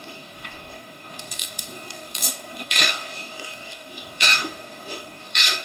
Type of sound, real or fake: fake